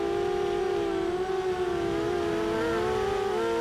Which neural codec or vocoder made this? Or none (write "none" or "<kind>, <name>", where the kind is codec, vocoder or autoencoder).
none